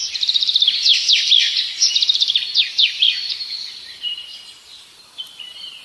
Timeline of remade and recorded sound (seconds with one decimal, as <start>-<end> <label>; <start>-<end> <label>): 0.0-0.9 remade; 0.9-1.8 recorded; 1.8-5.8 remade